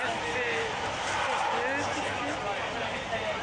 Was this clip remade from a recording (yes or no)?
no